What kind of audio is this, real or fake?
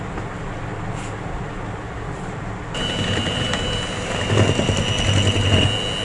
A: real